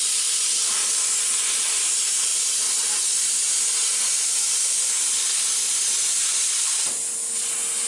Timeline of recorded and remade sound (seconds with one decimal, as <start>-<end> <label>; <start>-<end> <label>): 0.0-7.9 recorded